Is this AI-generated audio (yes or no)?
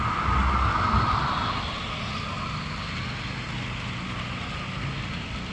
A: no